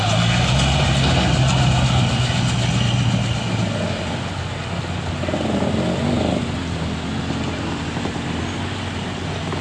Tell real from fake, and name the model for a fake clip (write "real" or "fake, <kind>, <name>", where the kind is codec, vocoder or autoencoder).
real